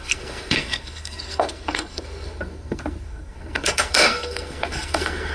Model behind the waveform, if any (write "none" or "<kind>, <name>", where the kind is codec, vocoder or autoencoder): codec, SNAC